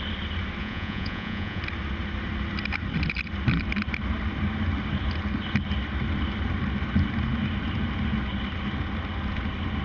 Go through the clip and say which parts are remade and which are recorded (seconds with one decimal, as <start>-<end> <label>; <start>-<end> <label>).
0.0-0.6 recorded; 0.6-1.6 remade; 1.6-9.8 recorded

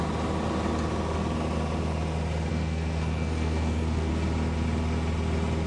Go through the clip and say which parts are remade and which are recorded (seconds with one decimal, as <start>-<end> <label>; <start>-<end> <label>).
0.0-2.5 recorded; 2.5-4.1 remade; 4.1-5.7 recorded

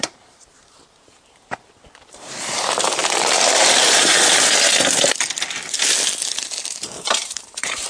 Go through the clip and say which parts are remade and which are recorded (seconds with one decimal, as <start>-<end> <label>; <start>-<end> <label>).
0.0-3.0 remade; 3.0-6.7 recorded; 6.7-7.9 remade

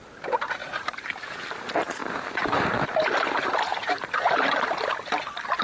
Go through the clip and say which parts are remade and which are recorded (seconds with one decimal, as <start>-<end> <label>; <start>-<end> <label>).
0.0-0.6 recorded; 0.6-1.2 remade; 1.2-3.7 recorded; 3.7-4.7 remade; 4.7-5.6 recorded

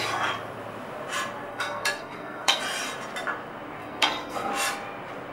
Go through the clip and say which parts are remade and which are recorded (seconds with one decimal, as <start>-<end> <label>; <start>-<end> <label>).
0.0-1.5 recorded; 1.5-2.6 remade; 2.6-3.8 recorded; 3.8-4.5 remade; 4.5-5.3 recorded